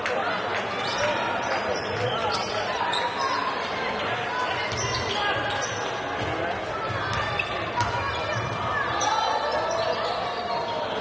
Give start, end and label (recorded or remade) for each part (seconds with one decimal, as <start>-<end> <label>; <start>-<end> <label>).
0.0-2.2 recorded; 2.2-2.8 remade; 2.8-11.0 recorded